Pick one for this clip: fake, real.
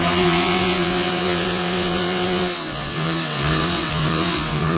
fake